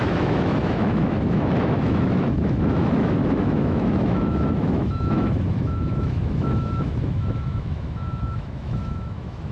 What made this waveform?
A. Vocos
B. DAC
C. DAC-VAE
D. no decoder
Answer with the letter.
C